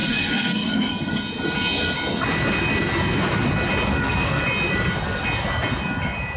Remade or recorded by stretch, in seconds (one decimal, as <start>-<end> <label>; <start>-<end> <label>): 0.0-1.1 remade; 1.1-3.9 recorded; 3.9-4.4 remade; 4.4-6.4 recorded